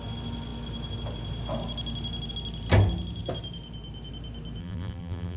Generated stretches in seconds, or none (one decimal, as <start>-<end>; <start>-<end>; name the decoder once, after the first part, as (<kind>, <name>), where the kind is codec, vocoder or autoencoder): 4.6-5.4 (vocoder, BigVGAN v2)